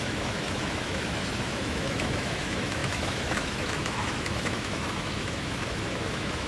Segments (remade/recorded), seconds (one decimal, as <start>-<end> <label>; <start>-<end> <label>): 0.0-6.5 remade